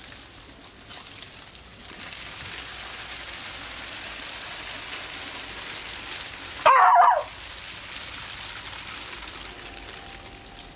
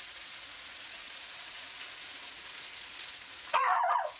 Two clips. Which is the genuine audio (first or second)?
first